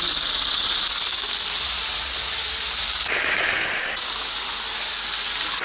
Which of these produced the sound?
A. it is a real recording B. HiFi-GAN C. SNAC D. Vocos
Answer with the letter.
A